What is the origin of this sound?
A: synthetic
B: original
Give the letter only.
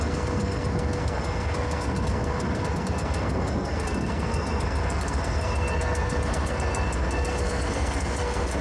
A